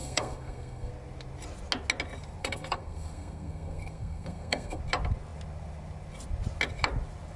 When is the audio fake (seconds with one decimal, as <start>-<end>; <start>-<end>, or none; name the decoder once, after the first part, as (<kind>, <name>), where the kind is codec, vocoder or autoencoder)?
0.0-0.9 (codec, SNAC); 2.4-4.8